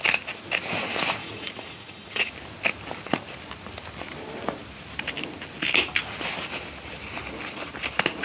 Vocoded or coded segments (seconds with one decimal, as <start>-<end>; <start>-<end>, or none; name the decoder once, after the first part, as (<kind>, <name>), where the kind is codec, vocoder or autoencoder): 1.2-2.3 (vocoder, Vocos)